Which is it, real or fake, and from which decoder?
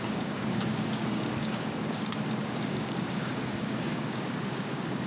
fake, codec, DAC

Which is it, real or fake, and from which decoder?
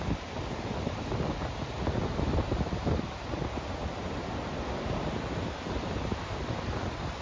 real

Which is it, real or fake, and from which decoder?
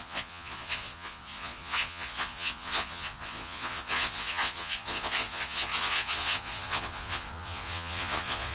fake, vocoder, Vocos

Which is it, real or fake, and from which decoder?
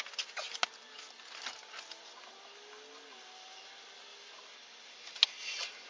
real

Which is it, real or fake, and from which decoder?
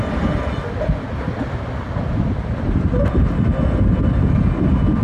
real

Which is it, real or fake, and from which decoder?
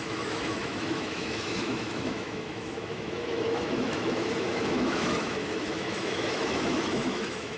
fake, autoencoder, DAC-VAE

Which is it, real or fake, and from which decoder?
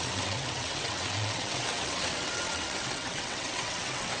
fake, vocoder, WaveNeXt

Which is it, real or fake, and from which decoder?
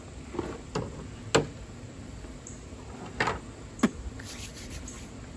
real